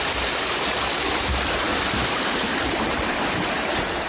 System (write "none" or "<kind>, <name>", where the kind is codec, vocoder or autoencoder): vocoder, BigVGAN v2